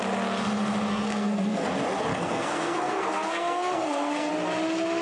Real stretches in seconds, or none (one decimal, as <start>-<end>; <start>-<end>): 0.0-0.9; 1.7-2.1; 4.3-5.0